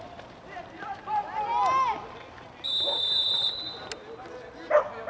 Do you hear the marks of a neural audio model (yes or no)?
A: no